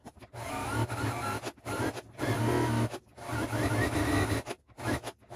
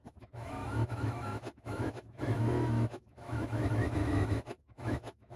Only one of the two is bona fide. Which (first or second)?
first